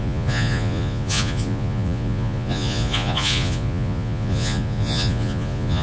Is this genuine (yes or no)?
no